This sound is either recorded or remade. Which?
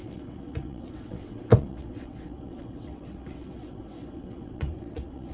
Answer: remade